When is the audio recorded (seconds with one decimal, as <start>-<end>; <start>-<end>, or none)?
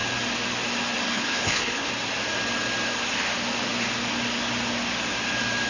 0.0-1.1; 1.9-5.7